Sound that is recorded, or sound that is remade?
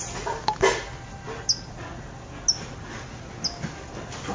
recorded